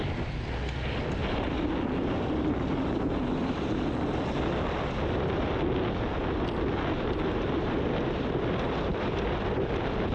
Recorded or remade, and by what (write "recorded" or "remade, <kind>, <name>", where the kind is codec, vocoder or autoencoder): recorded